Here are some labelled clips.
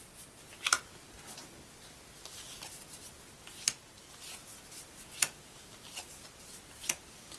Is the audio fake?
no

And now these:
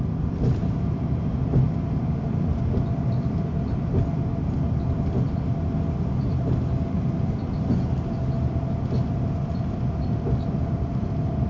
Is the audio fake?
no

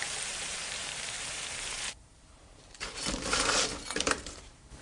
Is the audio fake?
yes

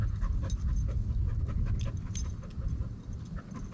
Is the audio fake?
no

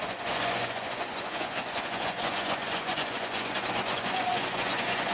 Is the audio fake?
yes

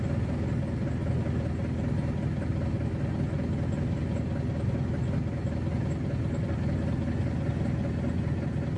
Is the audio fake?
no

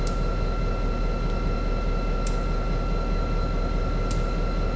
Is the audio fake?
no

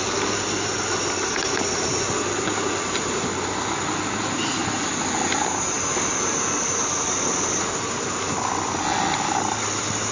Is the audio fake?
no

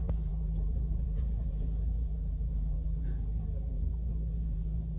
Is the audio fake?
yes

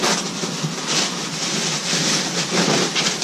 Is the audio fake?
no